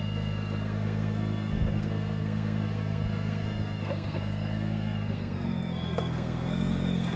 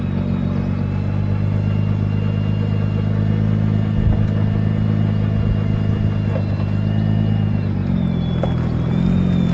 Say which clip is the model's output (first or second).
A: first